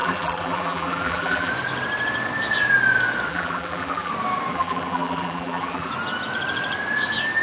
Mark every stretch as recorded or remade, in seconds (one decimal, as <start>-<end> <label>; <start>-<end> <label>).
0.0-1.5 remade; 1.5-3.3 recorded; 3.3-4.1 remade; 4.1-4.5 recorded; 4.5-5.9 remade; 5.9-7.4 recorded